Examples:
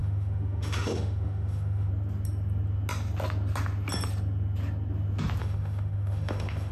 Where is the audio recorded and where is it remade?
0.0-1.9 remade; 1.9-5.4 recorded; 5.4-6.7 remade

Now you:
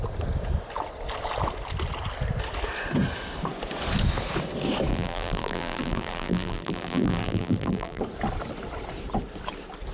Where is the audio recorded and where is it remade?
0.0-4.9 recorded; 4.9-8.0 remade; 8.0-9.9 recorded

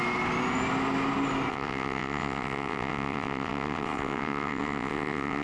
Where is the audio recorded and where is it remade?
0.0-1.5 recorded; 1.5-5.4 remade

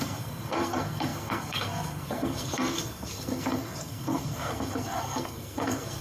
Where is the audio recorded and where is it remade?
0.0-6.0 remade

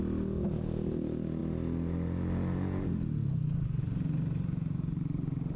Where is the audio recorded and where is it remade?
0.0-5.6 recorded